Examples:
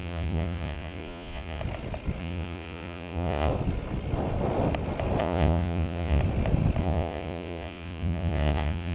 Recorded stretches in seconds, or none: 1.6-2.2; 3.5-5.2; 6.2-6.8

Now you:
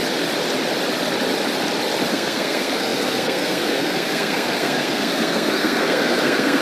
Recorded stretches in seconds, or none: 0.0-2.1